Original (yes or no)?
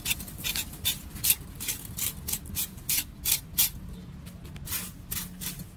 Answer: yes